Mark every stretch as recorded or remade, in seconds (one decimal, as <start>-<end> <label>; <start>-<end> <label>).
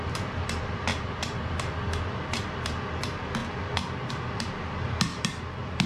0.0-0.9 recorded; 0.9-1.5 remade; 1.5-5.9 recorded